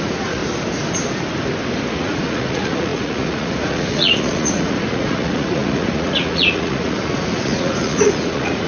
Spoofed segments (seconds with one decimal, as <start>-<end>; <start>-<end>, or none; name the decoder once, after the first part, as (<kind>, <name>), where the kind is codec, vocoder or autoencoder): 0.0-0.4 (vocoder, Vocos); 1.9-8.7